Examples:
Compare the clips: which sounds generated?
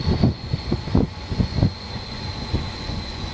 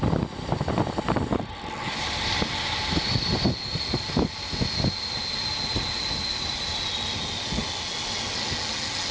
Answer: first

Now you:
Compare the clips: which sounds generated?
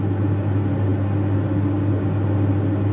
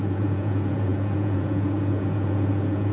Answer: second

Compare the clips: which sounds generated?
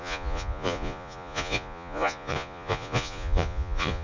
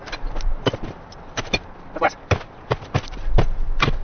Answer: first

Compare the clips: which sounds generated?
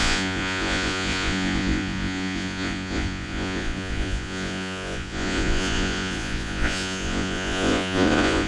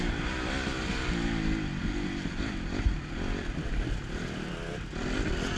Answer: first